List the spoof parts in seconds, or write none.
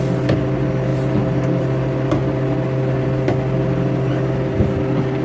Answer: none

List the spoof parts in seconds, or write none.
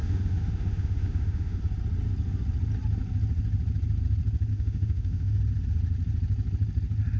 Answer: 0.0-1.6 (autoencoder, DAC-VAE); 4.5-5.4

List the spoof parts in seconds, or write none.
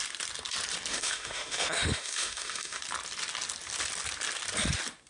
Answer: 0.9-2.8 (autoencoder, DAC-VAE)